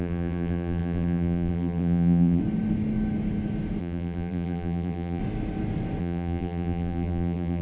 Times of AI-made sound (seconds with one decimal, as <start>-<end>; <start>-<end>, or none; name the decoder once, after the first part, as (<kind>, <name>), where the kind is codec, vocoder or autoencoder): 0.0-2.4 (vocoder, BigVGAN v2); 3.8-5.2; 6.0-7.6